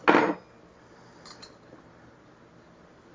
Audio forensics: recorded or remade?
recorded